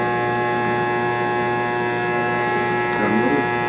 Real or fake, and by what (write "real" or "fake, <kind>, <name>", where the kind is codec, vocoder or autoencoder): real